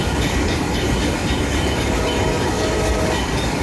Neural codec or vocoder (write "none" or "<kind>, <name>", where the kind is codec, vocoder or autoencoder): codec, DAC